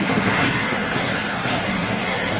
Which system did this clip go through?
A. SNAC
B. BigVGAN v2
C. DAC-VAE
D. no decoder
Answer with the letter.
A